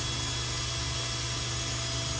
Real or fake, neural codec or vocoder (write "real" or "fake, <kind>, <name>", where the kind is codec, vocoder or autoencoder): real